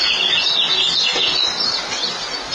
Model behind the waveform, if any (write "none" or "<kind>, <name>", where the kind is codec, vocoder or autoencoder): none